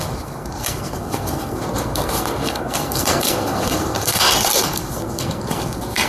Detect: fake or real fake